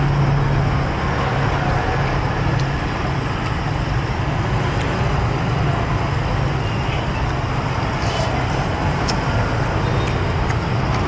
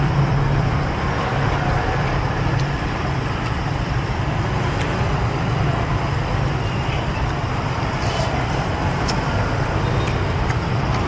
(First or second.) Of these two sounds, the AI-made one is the second